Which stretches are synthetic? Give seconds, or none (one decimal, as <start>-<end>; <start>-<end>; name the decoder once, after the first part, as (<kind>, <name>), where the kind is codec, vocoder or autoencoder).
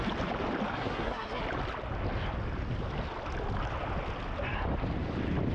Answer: 0.7-1.4 (codec, SNAC)